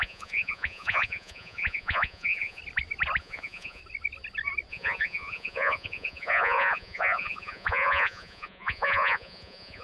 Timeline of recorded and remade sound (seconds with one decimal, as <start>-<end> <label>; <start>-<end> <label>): 0.0-2.6 remade; 2.6-3.2 recorded; 3.2-3.8 remade; 3.8-4.7 recorded; 4.7-9.8 remade